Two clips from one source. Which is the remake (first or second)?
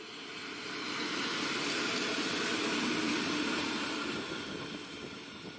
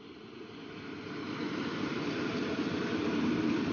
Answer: second